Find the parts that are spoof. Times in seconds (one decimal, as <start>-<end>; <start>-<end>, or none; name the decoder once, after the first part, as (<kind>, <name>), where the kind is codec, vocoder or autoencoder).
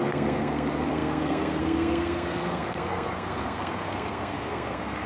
0.0-5.1 (codec, SNAC)